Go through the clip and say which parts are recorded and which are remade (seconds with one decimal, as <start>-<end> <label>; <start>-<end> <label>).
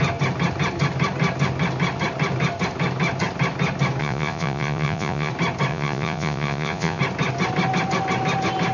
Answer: 0.0-4.0 recorded; 4.0-5.3 remade; 5.3-5.7 recorded; 5.7-7.0 remade; 7.0-8.7 recorded